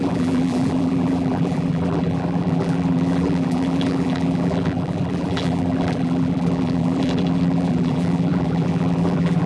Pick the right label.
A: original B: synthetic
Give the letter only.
B